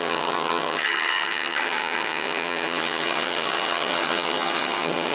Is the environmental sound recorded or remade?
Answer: remade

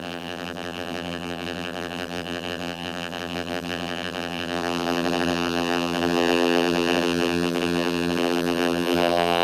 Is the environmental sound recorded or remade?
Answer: remade